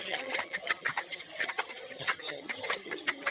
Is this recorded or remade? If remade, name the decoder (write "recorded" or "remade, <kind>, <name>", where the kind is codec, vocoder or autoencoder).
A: remade, vocoder, HiFi-GAN